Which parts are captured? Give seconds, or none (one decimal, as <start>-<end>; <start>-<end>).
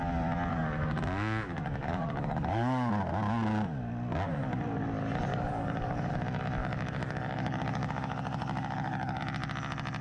0.0-0.5; 2.9-5.3; 6.1-6.6; 9.2-10.0